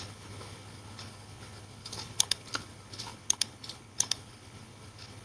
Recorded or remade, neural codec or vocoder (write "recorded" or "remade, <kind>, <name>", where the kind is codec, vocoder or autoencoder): remade, codec, HILCodec